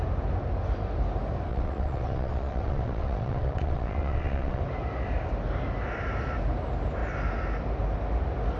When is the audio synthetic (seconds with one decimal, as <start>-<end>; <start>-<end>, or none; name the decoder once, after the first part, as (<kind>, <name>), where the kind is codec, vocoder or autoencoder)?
1.5-4.6 (vocoder, WaveNeXt)